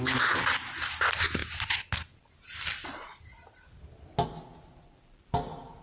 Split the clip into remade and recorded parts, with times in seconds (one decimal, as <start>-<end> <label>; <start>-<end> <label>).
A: 0.0-5.8 recorded